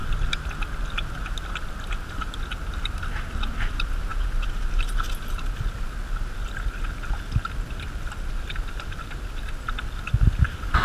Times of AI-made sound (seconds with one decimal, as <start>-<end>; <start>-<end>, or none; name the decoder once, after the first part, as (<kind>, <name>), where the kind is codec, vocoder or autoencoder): none